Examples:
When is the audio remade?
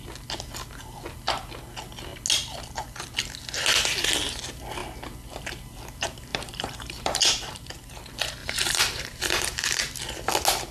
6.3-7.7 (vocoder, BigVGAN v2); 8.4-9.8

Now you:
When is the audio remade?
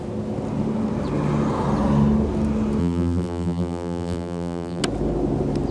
2.8-4.8 (vocoder, BigVGAN v2)